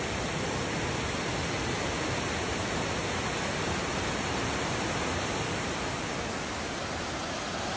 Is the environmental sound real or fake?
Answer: real